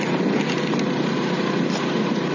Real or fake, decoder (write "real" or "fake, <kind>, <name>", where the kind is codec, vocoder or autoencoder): real